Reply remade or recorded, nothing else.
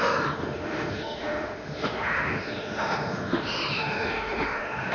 remade